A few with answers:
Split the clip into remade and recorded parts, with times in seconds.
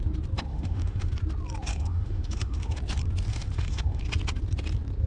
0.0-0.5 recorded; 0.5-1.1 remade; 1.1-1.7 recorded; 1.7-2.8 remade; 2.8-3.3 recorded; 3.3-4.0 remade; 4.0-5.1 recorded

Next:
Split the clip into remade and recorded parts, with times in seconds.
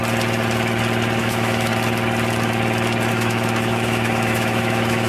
0.0-1.2 recorded; 1.2-1.7 remade; 1.7-3.1 recorded; 3.1-5.1 remade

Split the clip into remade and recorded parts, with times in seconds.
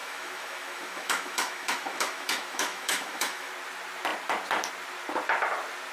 0.0-3.5 remade; 3.5-5.9 recorded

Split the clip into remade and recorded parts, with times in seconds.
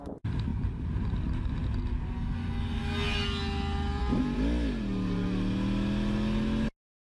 0.0-7.0 recorded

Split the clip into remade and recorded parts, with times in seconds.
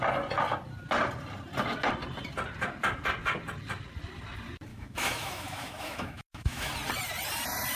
0.0-4.7 recorded; 4.7-6.7 remade; 6.7-7.8 recorded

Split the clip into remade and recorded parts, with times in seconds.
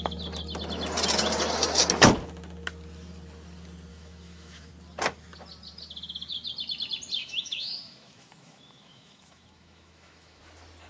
0.0-3.9 recorded; 3.9-4.7 remade; 4.7-7.2 recorded; 7.2-10.4 remade; 10.4-10.9 recorded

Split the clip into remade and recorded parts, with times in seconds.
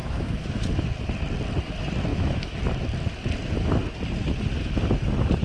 0.0-0.7 remade; 0.7-2.1 recorded; 2.1-2.6 remade; 2.6-5.4 recorded